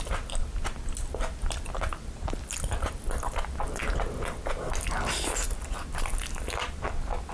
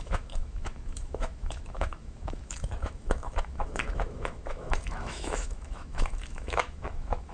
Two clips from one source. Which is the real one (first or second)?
first